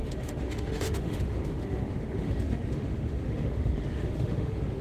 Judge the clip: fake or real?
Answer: fake